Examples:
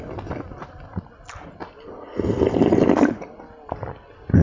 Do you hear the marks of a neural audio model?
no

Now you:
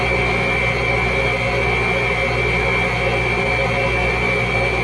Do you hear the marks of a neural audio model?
no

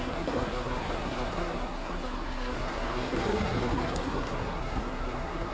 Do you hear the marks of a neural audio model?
yes